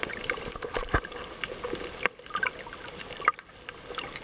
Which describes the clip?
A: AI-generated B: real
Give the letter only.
B